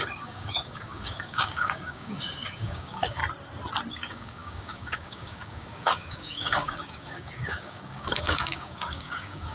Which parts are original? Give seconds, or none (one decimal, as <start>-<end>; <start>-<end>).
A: 3.2-3.9